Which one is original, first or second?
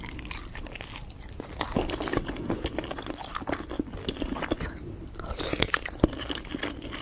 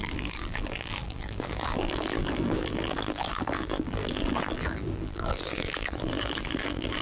first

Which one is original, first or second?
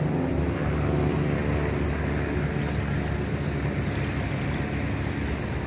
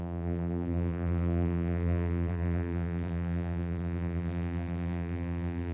first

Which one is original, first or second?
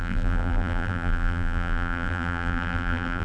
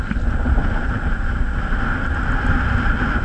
second